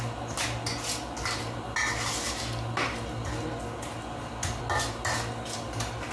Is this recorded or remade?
recorded